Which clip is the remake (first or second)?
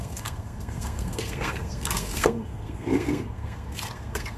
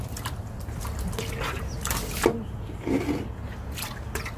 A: first